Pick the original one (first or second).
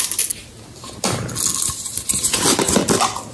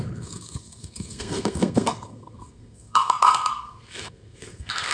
first